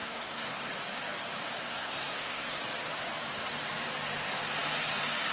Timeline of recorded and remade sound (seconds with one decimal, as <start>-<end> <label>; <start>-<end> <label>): 0.0-0.7 remade; 0.7-1.6 recorded; 1.6-2.6 remade; 2.6-5.3 recorded